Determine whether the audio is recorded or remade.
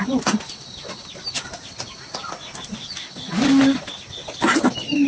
recorded